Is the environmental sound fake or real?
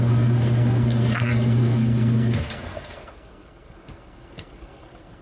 fake